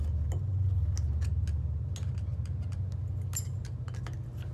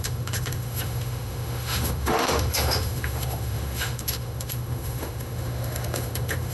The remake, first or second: second